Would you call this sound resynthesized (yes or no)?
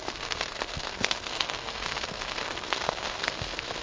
yes